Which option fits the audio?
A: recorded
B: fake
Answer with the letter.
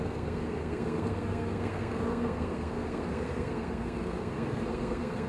B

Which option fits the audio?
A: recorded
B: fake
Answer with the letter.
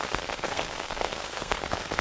B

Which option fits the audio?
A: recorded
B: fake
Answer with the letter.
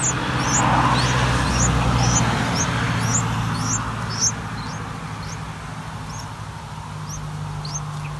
A